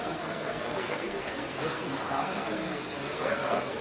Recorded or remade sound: remade